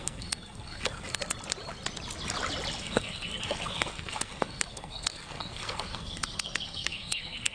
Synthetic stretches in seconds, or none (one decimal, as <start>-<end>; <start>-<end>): 0.0-1.2; 2.8-7.5